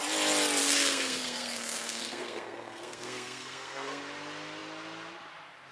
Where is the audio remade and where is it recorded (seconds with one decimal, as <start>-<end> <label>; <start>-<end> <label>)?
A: 0.0-0.6 recorded; 0.6-4.0 remade; 4.0-5.7 recorded